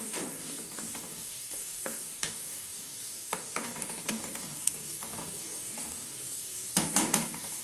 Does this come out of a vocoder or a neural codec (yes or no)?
yes